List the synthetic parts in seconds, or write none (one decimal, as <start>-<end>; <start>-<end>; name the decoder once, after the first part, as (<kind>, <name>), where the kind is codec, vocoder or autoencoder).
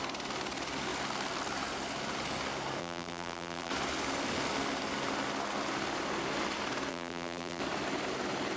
2.8-3.7 (vocoder, BigVGAN v2); 6.9-7.6